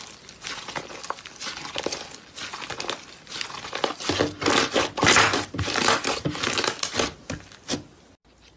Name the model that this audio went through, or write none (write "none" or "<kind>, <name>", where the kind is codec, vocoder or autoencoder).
none